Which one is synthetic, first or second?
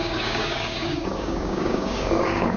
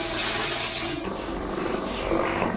first